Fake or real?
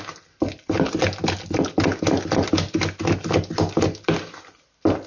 real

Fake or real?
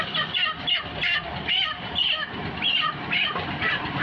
fake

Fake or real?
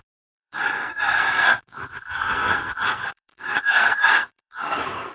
fake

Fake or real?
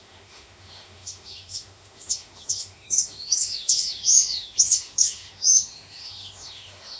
fake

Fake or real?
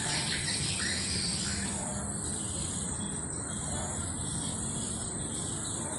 fake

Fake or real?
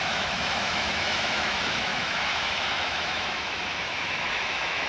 fake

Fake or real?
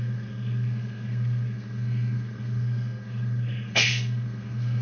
fake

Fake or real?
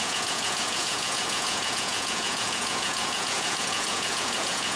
fake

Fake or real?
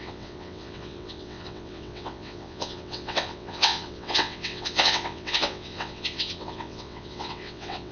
fake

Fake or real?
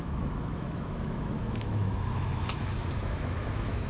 fake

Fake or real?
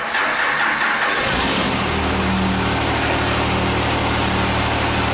real